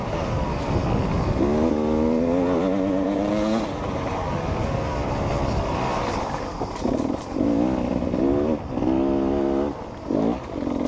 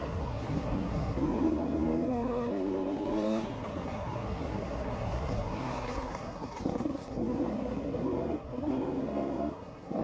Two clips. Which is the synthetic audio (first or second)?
second